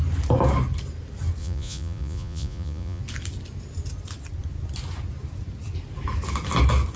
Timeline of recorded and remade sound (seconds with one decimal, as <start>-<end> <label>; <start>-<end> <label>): 0.0-1.4 recorded; 1.4-3.0 remade; 3.0-7.0 recorded